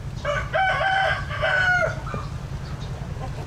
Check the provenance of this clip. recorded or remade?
recorded